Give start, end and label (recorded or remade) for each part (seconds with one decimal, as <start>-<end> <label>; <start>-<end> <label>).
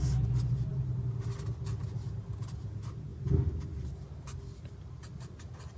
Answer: 0.0-5.8 recorded